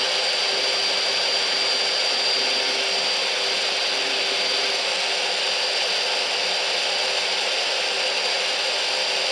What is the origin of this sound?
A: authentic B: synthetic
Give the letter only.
A